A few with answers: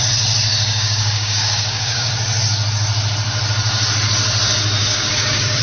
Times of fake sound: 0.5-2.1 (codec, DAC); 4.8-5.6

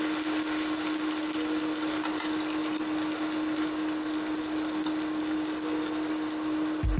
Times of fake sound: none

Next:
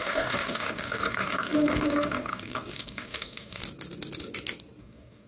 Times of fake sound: 0.0-3.6 (codec, DAC); 4.8-5.3